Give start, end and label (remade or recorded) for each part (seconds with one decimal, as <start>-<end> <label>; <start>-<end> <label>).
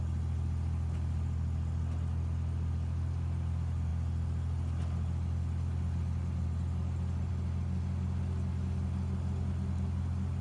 0.0-10.4 recorded